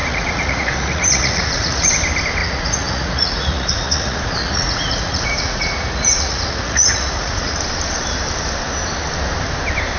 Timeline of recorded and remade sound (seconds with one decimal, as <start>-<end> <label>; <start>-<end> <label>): 0.0-1.9 remade; 1.9-2.4 recorded; 2.4-7.6 remade; 7.6-10.0 recorded